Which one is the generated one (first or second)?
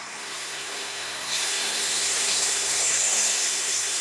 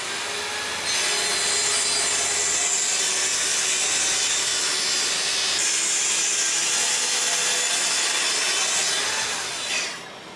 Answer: first